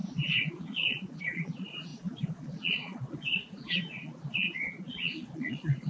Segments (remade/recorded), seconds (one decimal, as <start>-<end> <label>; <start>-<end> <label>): 0.0-5.9 remade